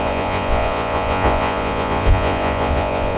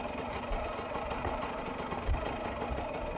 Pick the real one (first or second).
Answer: second